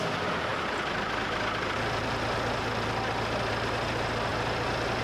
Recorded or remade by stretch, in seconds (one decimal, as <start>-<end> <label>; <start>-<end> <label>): 0.0-5.0 recorded